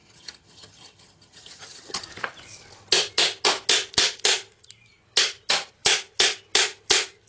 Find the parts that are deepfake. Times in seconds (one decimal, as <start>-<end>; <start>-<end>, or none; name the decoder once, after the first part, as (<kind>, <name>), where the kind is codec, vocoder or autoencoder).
0.0-2.0 (vocoder, HiFi-GAN)